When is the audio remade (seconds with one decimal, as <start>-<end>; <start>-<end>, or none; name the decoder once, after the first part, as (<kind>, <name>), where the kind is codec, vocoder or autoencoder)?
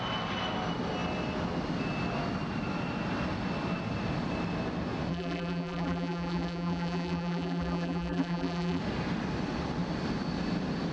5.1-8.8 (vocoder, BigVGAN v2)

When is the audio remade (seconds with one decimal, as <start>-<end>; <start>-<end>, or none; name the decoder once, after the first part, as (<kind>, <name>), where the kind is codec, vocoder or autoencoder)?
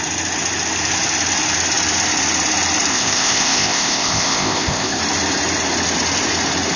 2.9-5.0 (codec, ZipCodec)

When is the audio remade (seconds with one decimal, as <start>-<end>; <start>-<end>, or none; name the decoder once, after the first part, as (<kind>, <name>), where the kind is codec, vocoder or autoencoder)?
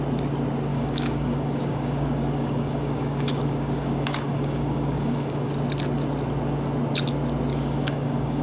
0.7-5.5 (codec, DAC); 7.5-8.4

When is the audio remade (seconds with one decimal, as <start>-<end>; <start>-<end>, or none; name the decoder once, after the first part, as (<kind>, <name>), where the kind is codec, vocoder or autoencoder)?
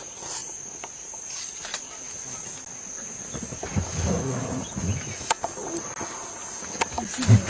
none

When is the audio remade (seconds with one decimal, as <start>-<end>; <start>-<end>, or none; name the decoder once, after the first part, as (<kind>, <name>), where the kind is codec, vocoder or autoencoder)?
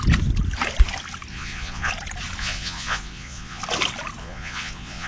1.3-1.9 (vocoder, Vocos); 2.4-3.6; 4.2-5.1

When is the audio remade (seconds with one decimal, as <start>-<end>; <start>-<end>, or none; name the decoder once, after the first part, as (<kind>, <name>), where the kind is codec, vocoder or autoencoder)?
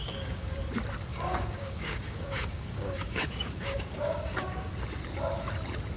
0.0-0.5 (codec, DAC); 1.1-4.7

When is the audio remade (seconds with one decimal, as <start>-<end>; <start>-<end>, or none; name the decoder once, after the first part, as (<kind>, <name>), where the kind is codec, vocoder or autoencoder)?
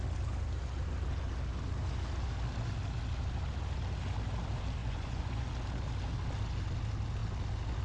4.8-5.5 (vocoder, Vocos)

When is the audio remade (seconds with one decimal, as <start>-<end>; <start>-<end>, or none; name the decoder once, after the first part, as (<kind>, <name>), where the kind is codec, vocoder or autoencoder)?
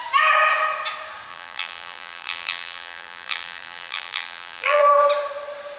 1.3-4.8 (vocoder, BigVGAN v2)